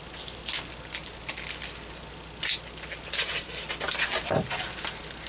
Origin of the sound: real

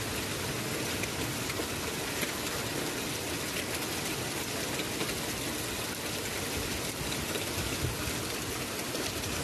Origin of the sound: real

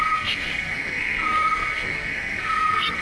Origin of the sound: fake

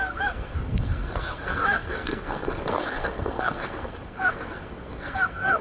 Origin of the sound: fake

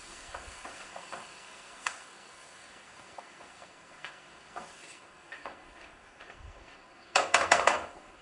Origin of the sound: fake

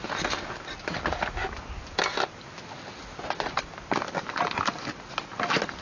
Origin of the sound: real